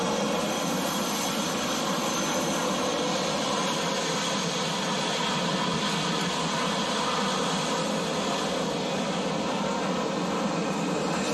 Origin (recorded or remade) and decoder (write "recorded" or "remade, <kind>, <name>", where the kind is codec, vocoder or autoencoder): recorded